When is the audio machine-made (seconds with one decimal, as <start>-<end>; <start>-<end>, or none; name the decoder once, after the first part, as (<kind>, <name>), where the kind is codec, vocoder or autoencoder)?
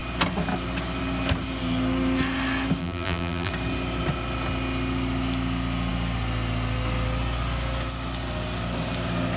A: 2.8-3.5 (vocoder, BigVGAN v2)